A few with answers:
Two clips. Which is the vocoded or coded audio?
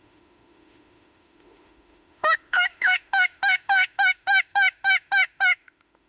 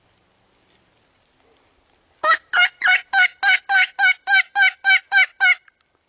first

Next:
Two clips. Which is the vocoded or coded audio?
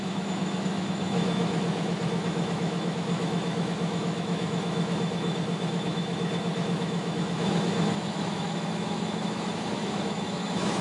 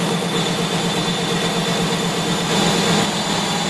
first